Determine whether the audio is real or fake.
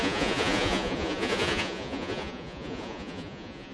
fake